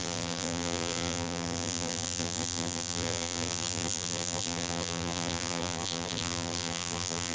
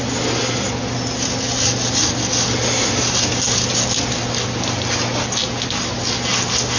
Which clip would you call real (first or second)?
second